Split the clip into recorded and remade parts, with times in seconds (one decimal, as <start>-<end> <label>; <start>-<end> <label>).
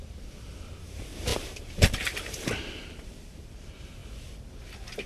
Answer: 0.0-4.0 remade; 4.0-5.1 recorded